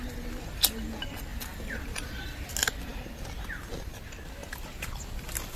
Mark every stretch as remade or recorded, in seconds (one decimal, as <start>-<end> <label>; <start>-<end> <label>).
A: 0.0-1.3 recorded; 1.3-2.5 remade; 2.5-4.4 recorded; 4.4-4.9 remade; 4.9-5.6 recorded